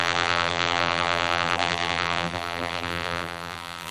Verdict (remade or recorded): remade